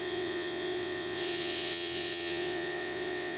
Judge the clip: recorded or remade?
remade